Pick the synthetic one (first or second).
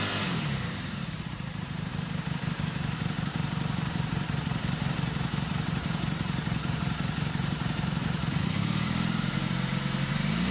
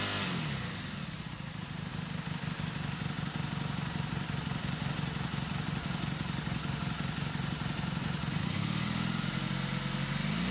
first